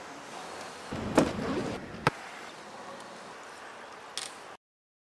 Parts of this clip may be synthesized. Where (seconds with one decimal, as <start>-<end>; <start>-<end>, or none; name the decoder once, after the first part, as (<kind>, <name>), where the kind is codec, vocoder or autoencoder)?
1.6-3.6 (vocoder, BigVGAN v2)